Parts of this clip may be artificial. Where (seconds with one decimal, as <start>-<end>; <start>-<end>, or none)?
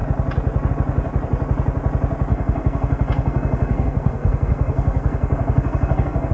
2.3-6.3